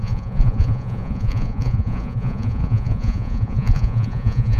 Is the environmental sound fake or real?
fake